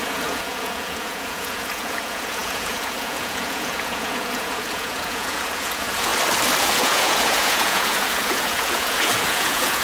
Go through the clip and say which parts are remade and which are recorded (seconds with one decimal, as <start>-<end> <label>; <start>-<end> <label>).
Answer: 0.0-6.1 remade; 6.1-6.6 recorded; 6.6-9.8 remade